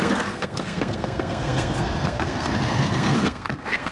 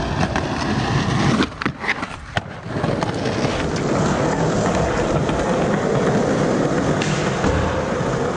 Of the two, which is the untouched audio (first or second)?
second